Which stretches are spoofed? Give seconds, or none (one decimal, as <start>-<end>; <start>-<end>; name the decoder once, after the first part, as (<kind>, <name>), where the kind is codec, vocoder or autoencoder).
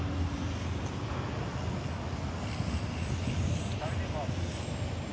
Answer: none